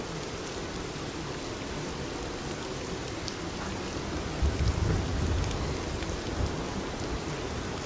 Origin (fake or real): real